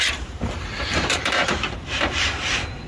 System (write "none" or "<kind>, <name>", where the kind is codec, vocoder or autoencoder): vocoder, BigVGAN v2